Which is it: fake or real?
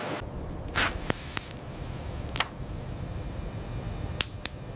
real